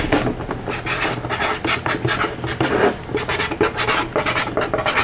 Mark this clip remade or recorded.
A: recorded